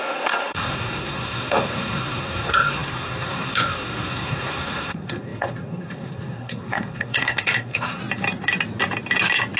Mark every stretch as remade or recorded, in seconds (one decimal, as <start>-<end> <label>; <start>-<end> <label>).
0.0-8.0 remade; 8.0-9.6 recorded